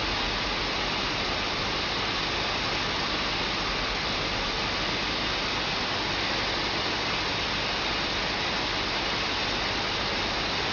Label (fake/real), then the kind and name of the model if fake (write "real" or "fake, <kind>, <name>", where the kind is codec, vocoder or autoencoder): real